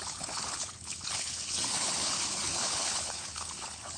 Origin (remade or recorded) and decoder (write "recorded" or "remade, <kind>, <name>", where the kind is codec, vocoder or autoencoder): remade, codec, HILCodec